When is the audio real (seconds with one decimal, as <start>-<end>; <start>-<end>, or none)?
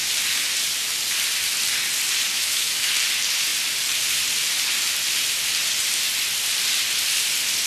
0.0-2.3; 2.9-7.7